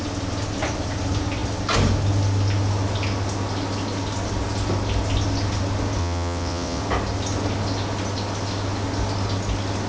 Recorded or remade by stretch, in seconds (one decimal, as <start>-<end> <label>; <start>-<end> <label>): 0.0-6.0 recorded; 6.0-6.8 remade; 6.8-9.9 recorded